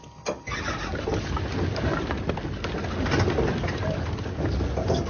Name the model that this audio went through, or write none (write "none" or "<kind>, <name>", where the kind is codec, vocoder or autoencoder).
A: none